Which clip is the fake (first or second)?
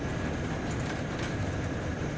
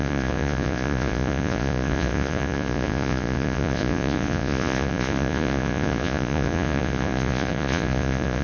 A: second